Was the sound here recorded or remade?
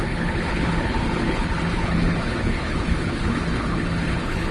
remade